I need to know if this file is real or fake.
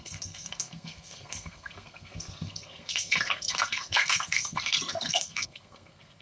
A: fake